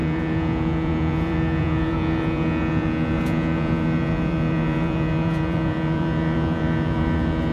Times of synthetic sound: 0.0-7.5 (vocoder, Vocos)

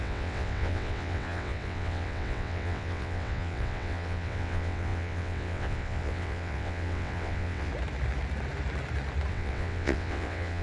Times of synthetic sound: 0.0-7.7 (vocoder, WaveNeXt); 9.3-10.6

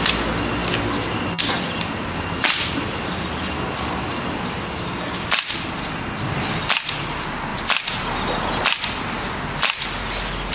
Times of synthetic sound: none

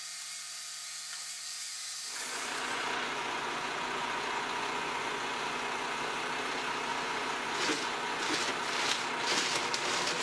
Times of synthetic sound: 1.5-6.2 (vocoder, Vocos); 6.9-8.5

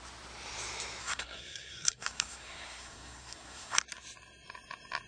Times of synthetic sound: 1.0-3.8 (codec, SNAC)

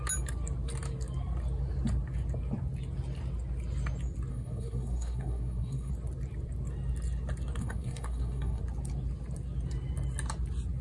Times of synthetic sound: 4.3-5.9 (codec, SNAC); 7.6-8.6

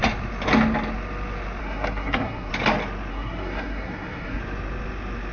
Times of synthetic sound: 1.6-2.5 (codec, SNAC); 3.1-4.4